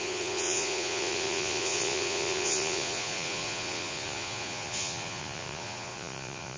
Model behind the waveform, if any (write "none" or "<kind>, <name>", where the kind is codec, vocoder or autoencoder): vocoder, Vocos